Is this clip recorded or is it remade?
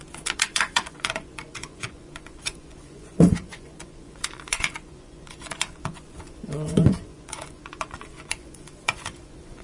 remade